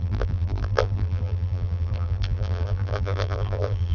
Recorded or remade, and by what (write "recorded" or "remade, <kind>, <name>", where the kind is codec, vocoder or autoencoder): remade, vocoder, BigVGAN v2